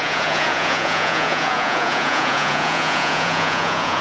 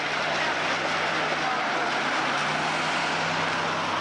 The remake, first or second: first